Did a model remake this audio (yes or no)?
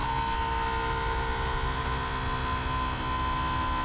no